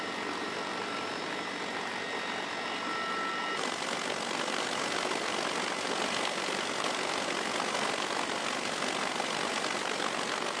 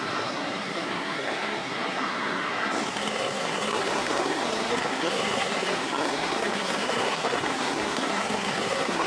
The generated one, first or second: second